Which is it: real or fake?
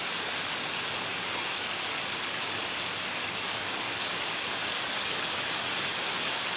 fake